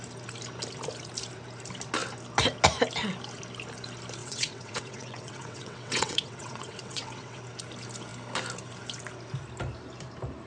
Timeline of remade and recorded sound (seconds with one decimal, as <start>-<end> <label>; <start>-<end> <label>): 0.0-4.2 recorded; 4.2-7.4 remade; 7.4-10.5 recorded

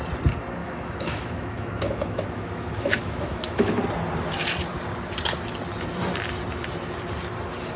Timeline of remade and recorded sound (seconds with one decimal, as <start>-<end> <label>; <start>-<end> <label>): 0.0-0.6 recorded; 0.6-3.8 remade; 3.8-7.8 recorded

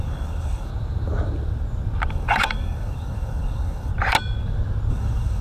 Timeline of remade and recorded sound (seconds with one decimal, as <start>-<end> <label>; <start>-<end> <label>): 0.0-0.7 remade; 0.7-2.1 recorded; 2.1-3.9 remade; 3.9-4.9 recorded; 4.9-5.4 remade

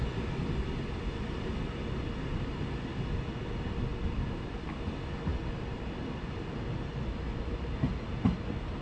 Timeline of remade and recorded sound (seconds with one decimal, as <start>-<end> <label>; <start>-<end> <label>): 0.0-8.8 recorded